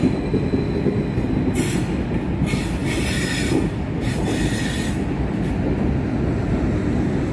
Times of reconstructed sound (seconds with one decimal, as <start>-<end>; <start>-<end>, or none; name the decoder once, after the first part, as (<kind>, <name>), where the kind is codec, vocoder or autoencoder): none